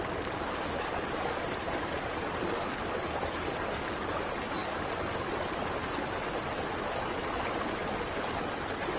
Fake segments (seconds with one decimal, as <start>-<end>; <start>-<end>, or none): none